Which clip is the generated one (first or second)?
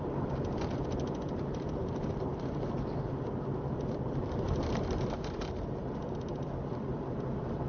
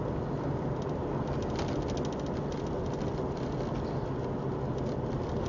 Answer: first